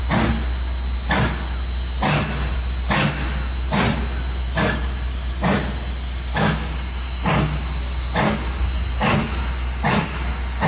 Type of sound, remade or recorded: recorded